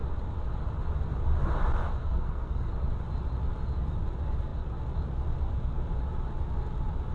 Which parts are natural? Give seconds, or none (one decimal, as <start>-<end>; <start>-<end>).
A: 0.0-2.0; 2.7-7.1